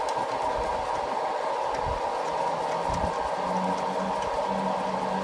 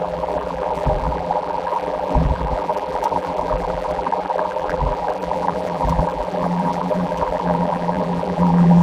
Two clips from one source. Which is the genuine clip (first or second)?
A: first